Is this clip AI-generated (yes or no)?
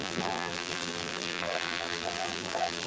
yes